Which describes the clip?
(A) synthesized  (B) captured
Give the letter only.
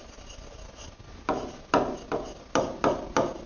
B